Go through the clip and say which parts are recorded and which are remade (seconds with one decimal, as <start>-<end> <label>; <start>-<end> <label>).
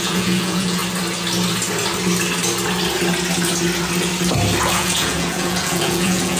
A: 0.0-0.8 remade; 0.8-4.6 recorded; 4.6-6.4 remade